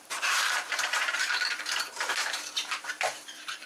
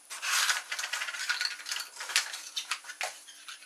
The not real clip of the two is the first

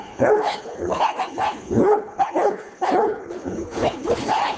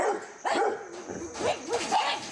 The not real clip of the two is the first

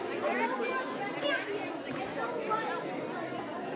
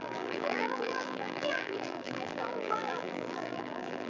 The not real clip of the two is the second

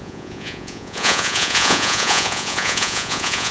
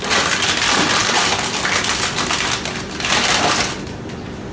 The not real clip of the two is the first